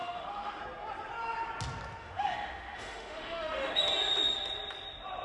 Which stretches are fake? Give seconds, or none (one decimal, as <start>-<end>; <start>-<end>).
0.0-0.6; 2.0-3.8